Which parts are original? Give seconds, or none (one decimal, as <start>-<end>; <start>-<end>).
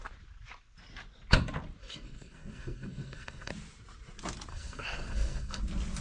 0.0-1.8; 3.5-4.5; 5.6-6.0